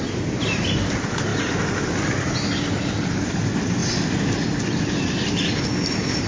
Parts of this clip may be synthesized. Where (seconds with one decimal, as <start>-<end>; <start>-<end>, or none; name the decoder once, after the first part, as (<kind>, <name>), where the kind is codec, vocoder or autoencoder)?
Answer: none